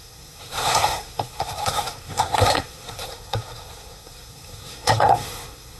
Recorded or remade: remade